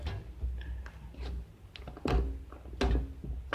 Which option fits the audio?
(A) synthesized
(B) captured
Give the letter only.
B